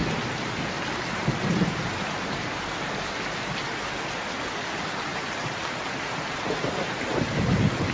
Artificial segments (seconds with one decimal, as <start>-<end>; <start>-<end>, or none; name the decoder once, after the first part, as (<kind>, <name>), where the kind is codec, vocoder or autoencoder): 5.1-5.8 (vocoder, BigVGAN v2)